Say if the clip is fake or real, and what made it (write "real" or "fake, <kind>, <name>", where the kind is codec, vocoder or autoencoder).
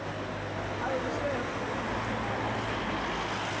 real